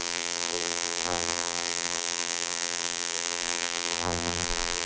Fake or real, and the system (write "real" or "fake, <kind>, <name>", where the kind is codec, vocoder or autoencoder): fake, vocoder, BigVGAN v2